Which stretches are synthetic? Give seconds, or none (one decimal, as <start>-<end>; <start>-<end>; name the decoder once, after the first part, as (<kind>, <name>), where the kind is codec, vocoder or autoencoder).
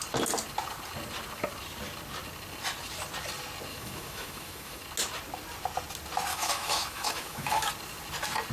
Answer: 3.7-4.8 (autoencoder, DAC-VAE); 6.3-7.7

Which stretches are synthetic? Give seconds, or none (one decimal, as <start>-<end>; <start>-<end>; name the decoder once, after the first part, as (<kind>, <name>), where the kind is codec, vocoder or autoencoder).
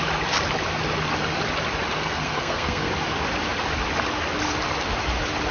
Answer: 1.9-2.9 (codec, SNAC)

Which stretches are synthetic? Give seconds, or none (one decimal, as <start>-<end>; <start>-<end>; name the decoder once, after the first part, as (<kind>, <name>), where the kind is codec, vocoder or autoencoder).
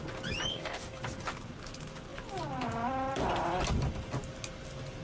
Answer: 0.5-1.0 (codec, DAC)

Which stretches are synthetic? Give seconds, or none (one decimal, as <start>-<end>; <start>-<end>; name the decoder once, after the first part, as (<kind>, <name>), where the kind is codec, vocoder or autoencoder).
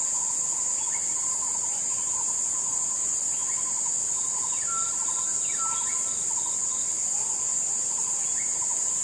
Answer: none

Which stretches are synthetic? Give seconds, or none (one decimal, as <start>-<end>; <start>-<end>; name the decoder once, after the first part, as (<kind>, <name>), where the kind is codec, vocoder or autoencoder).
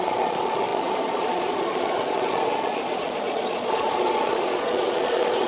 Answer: 0.0-5.5 (vocoder, Vocos)